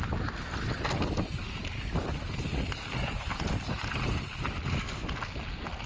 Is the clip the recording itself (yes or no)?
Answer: yes